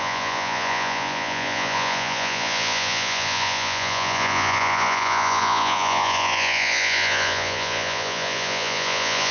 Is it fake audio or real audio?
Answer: fake